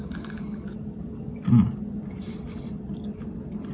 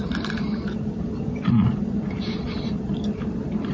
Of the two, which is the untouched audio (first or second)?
first